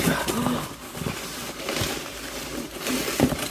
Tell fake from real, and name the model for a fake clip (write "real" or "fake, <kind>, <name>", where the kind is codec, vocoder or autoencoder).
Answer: real